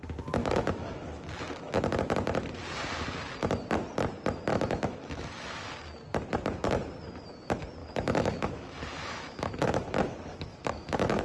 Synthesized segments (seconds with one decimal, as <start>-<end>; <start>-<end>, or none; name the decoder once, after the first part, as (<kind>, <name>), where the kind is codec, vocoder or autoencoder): 0.4-1.8 (autoencoder, DAC-VAE); 4.5-5.7; 7.8-11.2